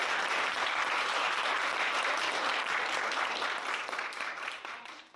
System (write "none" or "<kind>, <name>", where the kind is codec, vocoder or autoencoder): vocoder, BigVGAN v2